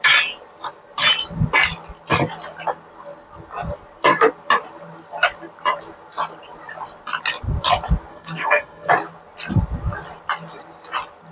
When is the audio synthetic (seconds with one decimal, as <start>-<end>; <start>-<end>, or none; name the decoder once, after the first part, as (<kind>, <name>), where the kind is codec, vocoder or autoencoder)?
8.1-8.9 (codec, SNAC)